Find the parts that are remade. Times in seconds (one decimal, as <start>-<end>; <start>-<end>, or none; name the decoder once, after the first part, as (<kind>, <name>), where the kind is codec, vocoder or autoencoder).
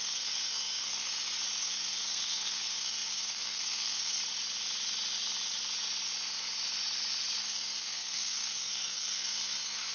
0.0-1.1 (codec, SNAC); 1.6-4.2; 7.4-9.9